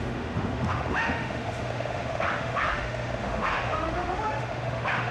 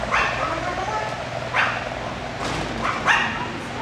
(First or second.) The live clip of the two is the second